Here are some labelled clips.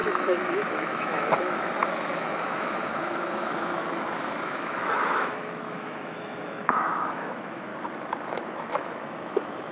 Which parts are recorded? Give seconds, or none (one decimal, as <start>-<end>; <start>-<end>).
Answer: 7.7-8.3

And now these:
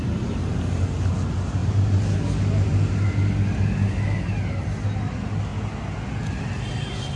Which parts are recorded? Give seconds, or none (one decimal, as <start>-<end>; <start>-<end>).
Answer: 0.0-7.2

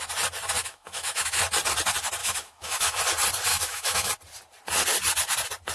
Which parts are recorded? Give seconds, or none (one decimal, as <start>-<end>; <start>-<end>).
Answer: 0.0-0.6; 1.4-2.2; 3.0-3.5; 4.1-5.7

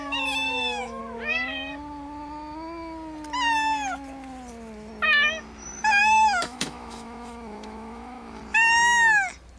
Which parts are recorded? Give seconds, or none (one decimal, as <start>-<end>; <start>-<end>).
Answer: 1.0-6.0; 8.4-9.6

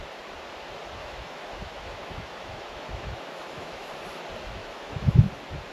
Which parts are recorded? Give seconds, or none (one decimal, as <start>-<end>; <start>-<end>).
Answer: 0.0-1.0; 3.9-4.6; 5.3-5.7

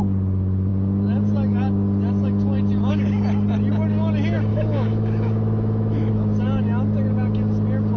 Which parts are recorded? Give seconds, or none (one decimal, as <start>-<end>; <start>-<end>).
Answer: 0.0-4.5; 6.1-8.0